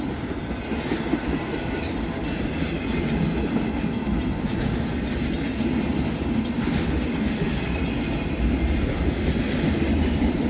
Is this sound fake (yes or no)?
no